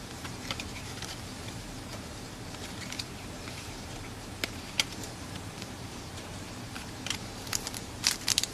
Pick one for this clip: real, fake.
fake